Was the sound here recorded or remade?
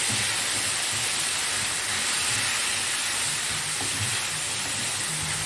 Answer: recorded